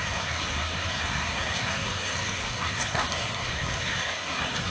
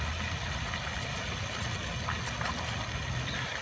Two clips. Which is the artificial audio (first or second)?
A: first